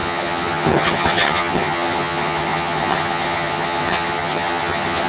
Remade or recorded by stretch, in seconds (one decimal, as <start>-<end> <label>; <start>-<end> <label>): 0.0-5.1 remade